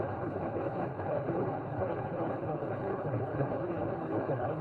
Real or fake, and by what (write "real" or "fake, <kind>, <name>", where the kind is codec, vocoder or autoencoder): fake, codec, HILCodec